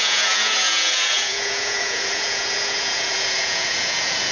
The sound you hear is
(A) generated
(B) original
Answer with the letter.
A